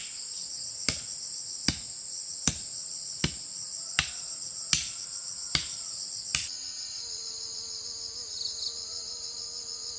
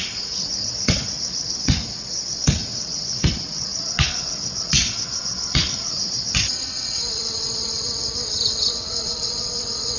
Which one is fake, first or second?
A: second